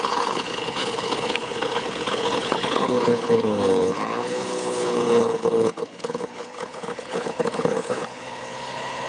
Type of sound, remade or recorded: remade